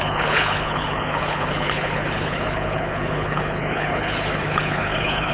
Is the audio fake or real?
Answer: fake